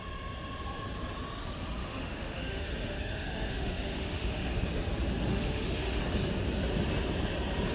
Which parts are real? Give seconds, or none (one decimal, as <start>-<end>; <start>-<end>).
0.0-1.8; 4.5-5.3; 6.0-7.7